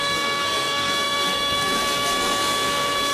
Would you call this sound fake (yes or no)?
yes